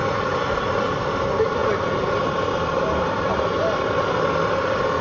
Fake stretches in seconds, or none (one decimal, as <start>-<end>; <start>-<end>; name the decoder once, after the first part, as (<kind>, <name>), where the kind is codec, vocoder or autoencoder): none

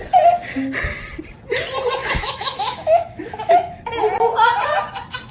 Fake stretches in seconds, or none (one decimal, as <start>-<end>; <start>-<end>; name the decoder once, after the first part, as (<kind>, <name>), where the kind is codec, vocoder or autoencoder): 2.0-3.8 (autoencoder, DAC-VAE)

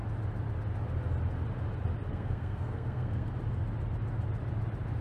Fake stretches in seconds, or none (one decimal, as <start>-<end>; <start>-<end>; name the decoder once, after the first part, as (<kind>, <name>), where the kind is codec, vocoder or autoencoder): 2.1-3.3 (codec, SNAC)

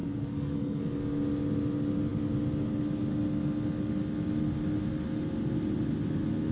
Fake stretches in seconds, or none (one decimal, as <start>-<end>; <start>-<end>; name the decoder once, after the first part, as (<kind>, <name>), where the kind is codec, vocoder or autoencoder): 0.0-0.8 (codec, SNAC)

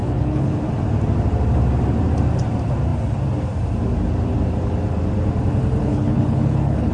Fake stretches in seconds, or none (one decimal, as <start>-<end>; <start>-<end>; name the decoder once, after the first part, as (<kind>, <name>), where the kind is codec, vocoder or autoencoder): 0.0-0.6 (codec, HILCodec); 5.8-6.9

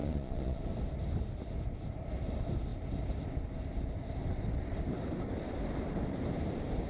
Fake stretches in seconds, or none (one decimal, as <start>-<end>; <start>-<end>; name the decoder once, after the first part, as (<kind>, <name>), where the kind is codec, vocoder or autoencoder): 0.0-0.6 (vocoder, Vocos)